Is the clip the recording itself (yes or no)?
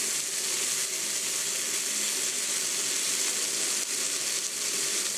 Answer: yes